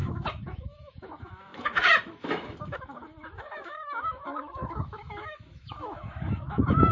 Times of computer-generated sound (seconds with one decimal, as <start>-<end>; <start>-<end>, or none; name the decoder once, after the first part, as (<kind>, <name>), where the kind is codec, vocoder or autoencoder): 0.0-6.9 (autoencoder, DAC-VAE)